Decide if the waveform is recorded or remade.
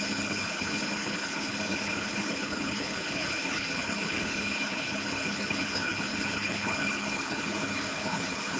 remade